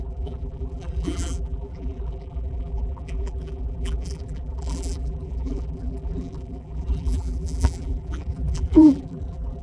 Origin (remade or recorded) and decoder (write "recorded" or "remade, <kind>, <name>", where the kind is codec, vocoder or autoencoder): remade, vocoder, BigVGAN v2